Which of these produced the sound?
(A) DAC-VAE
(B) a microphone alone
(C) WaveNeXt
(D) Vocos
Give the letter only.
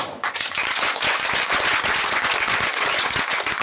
D